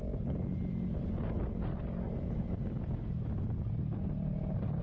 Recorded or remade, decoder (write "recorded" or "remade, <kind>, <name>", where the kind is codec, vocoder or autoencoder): recorded